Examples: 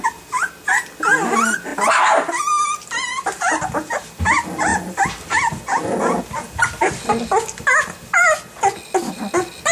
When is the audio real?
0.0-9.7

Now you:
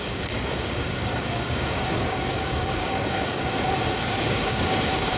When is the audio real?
none

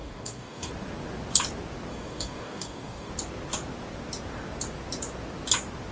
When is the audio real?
0.7-1.9; 3.1-5.9